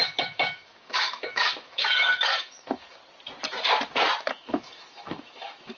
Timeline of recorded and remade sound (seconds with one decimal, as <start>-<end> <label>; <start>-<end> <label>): 0.0-3.0 remade; 3.0-4.3 recorded; 4.3-5.8 remade